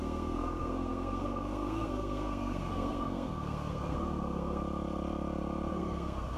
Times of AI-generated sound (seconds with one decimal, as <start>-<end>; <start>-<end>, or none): 0.0-4.6; 5.7-6.4